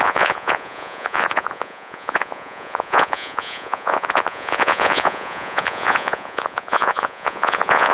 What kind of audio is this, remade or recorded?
remade